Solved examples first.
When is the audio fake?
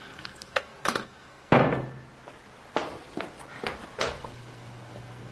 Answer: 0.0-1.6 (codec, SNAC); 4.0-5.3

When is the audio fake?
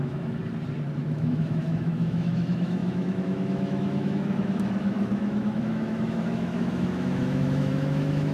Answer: 0.0-0.4 (autoencoder, DAC-VAE); 1.0-8.3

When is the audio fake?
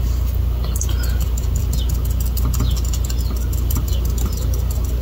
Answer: none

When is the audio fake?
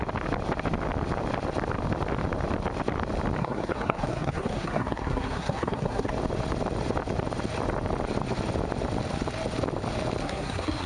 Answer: 3.4-6.1 (codec, SNAC); 10.2-10.9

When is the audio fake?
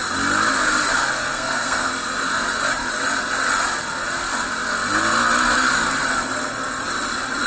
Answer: 1.3-1.9 (codec, SNAC)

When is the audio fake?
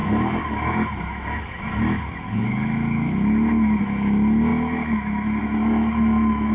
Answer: 0.0-6.5 (autoencoder, DAC-VAE)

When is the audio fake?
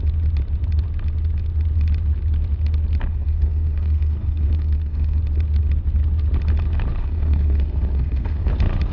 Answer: 3.1-5.2 (codec, SNAC); 7.0-8.5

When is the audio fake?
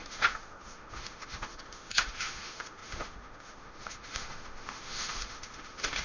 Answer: 0.0-6.0 (autoencoder, DAC-VAE)